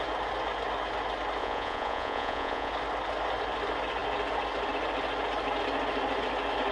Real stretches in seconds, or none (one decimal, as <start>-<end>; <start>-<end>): 0.0-1.4; 2.7-6.7